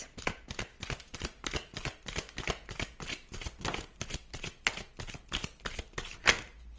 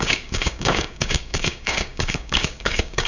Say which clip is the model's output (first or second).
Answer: second